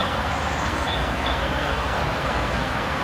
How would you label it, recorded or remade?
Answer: remade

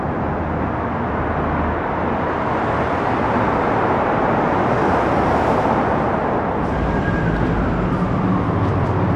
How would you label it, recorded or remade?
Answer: recorded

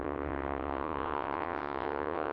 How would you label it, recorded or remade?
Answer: remade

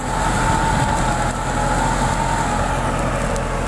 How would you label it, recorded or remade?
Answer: recorded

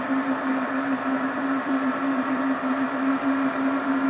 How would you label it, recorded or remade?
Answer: remade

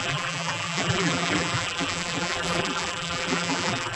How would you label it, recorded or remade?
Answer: remade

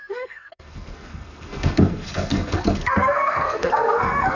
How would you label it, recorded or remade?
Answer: remade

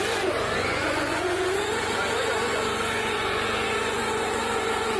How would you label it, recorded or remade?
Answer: remade